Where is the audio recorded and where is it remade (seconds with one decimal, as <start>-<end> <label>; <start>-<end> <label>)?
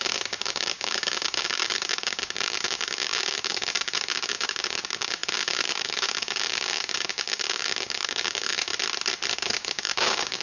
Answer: 0.0-8.7 remade; 8.7-9.3 recorded; 9.3-10.4 remade